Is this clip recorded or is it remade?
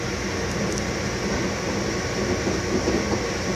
recorded